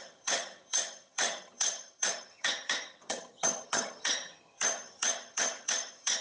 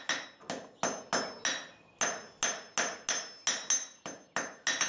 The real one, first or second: second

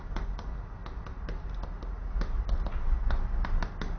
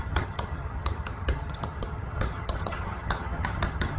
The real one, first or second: first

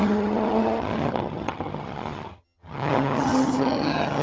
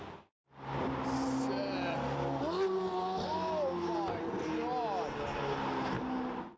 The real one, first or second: second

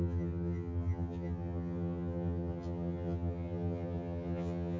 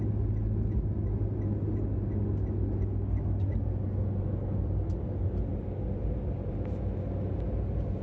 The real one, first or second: second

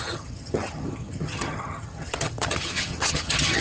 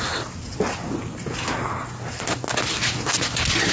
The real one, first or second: second